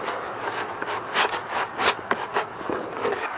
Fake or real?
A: fake